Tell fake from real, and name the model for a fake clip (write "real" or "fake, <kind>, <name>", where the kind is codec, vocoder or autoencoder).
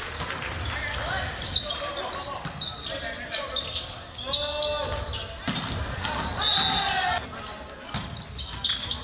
real